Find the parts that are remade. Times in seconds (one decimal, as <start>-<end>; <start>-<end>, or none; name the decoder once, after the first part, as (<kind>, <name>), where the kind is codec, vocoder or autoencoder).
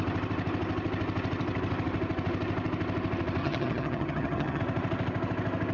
3.4-4.6 (vocoder, HiFi-GAN)